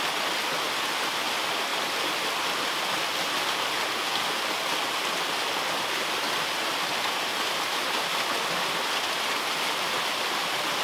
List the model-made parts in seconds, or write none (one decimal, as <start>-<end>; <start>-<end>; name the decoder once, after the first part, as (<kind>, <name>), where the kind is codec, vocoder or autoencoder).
7.3-7.8 (vocoder, BigVGAN v2)